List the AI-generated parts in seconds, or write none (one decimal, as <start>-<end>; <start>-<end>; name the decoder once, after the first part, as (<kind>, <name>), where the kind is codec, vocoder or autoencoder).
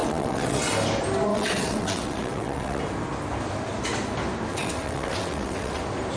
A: 0.0-0.7 (vocoder, WaveNeXt); 1.3-2.8; 4.5-5.8